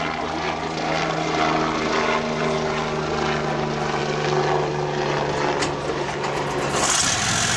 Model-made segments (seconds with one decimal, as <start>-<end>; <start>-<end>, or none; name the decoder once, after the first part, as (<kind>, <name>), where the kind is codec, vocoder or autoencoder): none